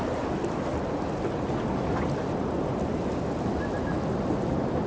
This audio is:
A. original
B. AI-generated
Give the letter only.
A